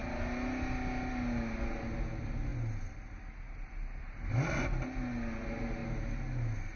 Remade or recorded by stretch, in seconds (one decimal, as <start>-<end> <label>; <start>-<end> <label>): 0.0-6.8 recorded